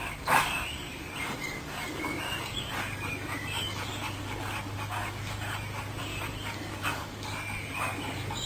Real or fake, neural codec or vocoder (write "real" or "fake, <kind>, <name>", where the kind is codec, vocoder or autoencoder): fake, codec, DAC